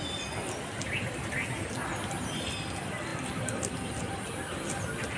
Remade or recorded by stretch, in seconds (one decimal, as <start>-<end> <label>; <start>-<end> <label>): 0.0-5.2 recorded